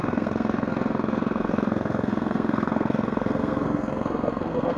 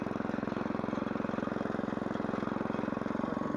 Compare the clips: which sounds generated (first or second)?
first